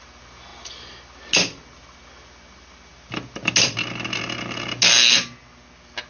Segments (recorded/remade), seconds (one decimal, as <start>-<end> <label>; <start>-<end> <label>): 0.0-6.1 recorded

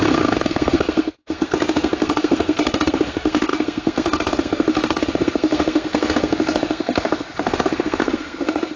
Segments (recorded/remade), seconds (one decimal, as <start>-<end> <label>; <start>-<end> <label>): 0.0-8.8 remade

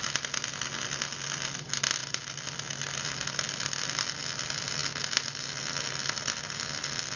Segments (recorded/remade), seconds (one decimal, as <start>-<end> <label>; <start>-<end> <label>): 0.0-7.2 recorded

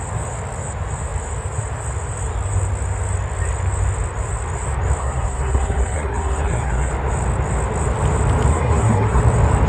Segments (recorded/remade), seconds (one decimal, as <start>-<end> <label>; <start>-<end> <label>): 0.0-5.0 recorded; 5.0-6.9 remade; 6.9-8.5 recorded; 8.5-9.2 remade; 9.2-9.7 recorded

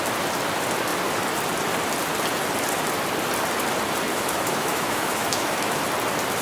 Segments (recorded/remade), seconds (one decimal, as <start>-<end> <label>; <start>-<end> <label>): 0.0-4.1 recorded; 4.1-5.8 remade; 5.8-6.4 recorded

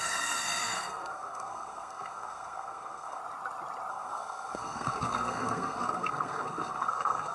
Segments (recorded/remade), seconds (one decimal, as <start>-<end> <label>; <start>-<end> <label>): 0.0-3.2 remade; 3.2-3.9 recorded; 3.9-7.3 remade

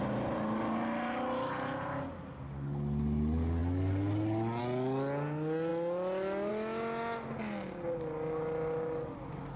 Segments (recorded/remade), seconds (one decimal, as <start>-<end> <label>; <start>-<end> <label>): 0.0-9.6 recorded